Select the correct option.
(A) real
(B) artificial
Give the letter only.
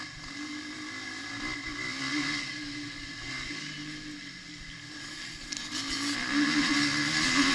B